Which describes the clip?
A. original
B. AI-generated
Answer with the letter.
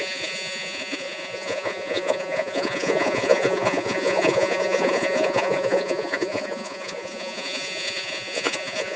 B